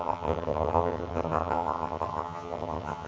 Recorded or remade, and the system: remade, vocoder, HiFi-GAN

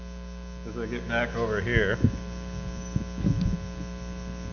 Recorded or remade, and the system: recorded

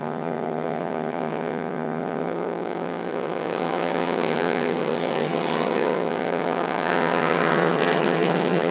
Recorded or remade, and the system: remade, vocoder, HiFi-GAN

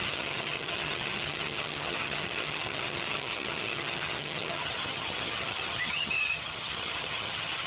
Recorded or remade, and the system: remade, vocoder, HiFi-GAN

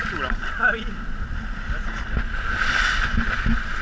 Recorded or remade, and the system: recorded